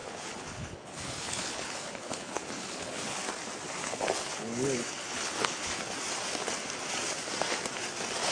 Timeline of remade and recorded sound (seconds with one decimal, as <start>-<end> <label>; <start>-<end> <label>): 0.0-3.3 remade; 3.3-3.8 recorded; 3.8-5.8 remade; 5.8-8.3 recorded